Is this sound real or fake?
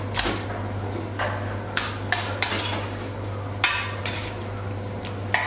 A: real